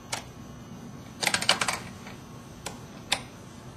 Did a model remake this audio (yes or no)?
no